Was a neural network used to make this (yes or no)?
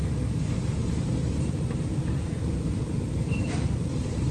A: yes